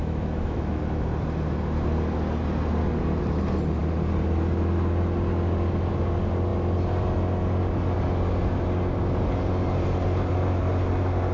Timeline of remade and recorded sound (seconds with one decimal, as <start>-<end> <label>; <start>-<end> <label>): 0.0-0.8 remade; 0.8-11.3 recorded